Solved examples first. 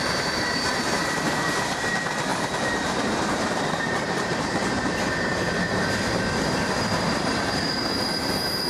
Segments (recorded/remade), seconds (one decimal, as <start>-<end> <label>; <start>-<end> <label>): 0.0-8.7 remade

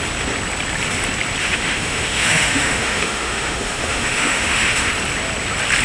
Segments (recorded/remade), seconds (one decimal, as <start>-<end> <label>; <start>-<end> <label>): 0.0-1.4 recorded; 1.4-4.9 remade; 4.9-5.8 recorded

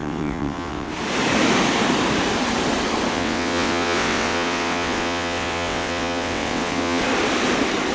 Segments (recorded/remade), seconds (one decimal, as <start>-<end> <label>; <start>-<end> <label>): 0.0-0.9 remade; 0.9-3.1 recorded; 3.1-7.0 remade; 7.0-7.9 recorded

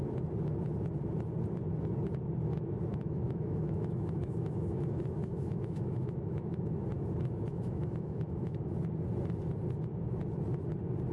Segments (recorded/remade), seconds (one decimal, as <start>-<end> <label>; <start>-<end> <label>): 0.0-2.9 recorded; 2.9-6.7 remade; 6.7-7.5 recorded; 7.5-8.8 remade; 8.8-11.1 recorded

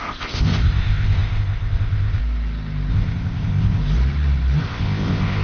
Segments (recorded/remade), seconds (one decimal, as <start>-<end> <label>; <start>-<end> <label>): 0.0-2.2 remade; 2.2-2.9 recorded; 2.9-3.8 remade; 3.8-4.6 recorded; 4.6-5.4 remade